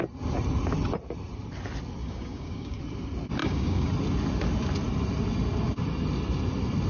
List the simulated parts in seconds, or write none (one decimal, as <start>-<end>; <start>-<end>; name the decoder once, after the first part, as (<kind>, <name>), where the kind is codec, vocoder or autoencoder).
2.0-2.8 (codec, DAC); 3.4-3.9